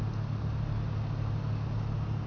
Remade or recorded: recorded